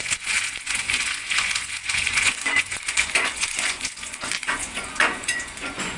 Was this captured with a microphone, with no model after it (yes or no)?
no